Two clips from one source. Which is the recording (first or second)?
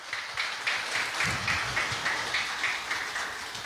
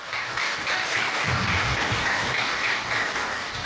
first